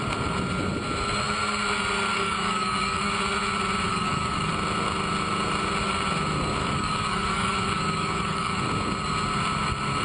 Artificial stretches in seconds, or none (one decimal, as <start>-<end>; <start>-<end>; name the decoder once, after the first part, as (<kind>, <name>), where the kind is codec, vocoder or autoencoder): 2.1-3.1 (codec, DAC); 3.9-4.5; 6.6-8.6